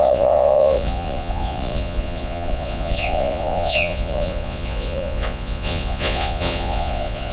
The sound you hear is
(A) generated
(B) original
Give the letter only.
A